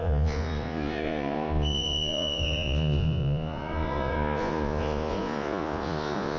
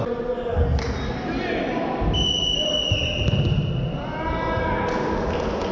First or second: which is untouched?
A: second